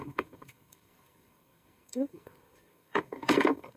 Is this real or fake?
fake